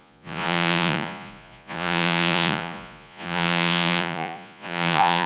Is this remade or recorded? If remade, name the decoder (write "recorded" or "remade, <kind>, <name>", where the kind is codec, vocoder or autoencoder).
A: remade, vocoder, Vocos